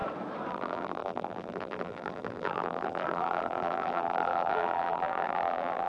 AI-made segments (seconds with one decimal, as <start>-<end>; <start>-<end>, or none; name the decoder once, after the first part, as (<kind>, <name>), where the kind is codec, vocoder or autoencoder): 0.5-5.9 (vocoder, BigVGAN v2)